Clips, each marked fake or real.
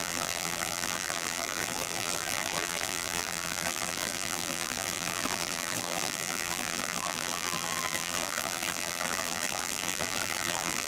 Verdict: fake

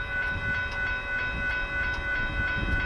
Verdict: real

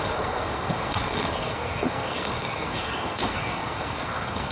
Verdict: fake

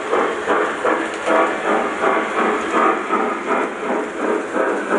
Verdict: real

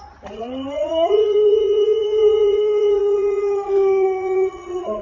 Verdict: fake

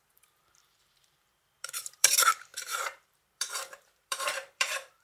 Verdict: fake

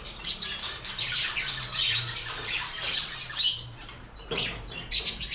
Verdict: fake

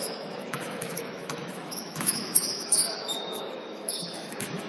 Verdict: fake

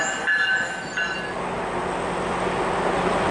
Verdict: real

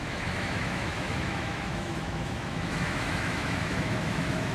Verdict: fake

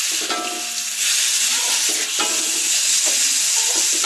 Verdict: real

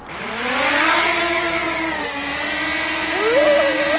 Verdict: real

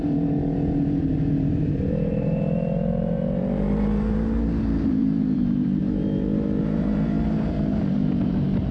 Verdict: fake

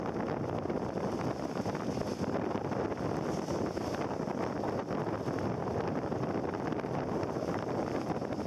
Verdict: real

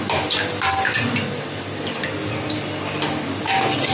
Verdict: real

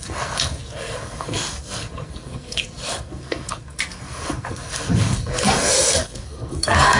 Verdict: fake